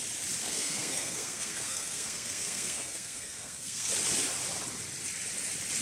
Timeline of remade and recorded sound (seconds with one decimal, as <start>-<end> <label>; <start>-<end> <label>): 0.0-0.4 recorded; 0.4-3.9 remade; 3.9-5.8 recorded